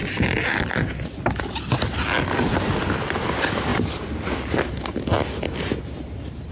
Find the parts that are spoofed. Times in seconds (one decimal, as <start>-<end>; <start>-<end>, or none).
none